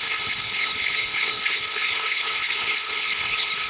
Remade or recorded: remade